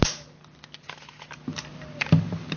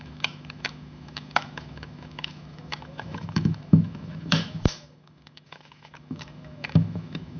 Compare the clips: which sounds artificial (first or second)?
second